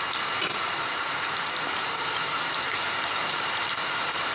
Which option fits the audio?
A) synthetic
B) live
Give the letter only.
A